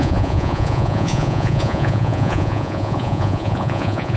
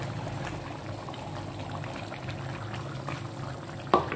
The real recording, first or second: second